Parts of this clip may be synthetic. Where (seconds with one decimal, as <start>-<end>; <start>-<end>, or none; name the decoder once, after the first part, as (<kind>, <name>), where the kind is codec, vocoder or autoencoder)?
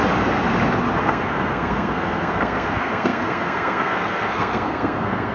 1.0-5.3 (codec, SNAC)